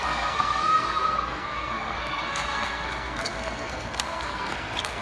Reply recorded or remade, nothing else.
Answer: remade